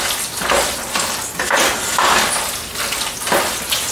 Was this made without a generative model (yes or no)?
yes